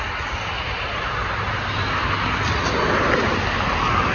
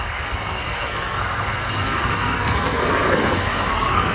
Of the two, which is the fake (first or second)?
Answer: second